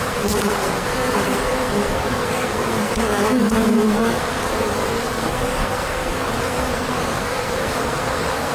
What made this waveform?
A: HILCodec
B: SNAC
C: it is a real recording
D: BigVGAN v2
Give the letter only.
B